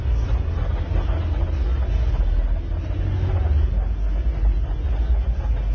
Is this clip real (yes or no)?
yes